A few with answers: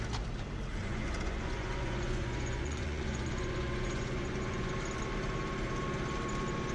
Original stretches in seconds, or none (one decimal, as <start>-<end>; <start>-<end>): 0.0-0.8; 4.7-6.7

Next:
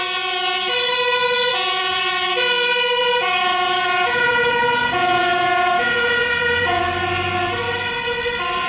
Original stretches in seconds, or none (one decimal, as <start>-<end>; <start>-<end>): 0.0-1.5; 2.0-3.0; 6.8-8.7

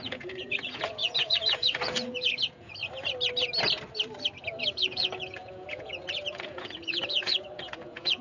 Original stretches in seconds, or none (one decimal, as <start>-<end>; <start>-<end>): 2.8-4.7

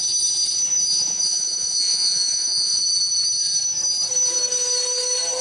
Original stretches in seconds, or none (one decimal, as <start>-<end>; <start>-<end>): 0.0-0.9; 2.8-5.4

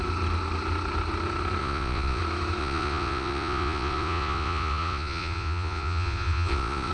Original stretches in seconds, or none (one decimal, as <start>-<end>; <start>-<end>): 0.0-1.6; 2.2-2.6